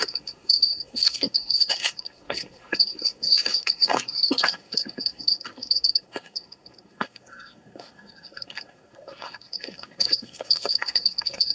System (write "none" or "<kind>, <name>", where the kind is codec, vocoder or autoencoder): codec, SNAC